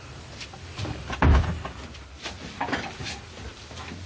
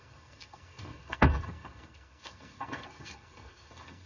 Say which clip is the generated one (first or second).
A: second